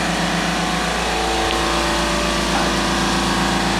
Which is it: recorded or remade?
remade